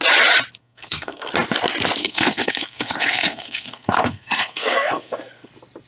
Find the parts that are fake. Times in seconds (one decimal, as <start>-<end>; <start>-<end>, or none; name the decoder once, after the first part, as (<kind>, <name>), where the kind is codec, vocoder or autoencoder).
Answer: 0.6-1.3 (codec, SNAC); 2.0-5.5